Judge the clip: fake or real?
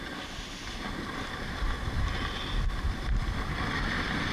real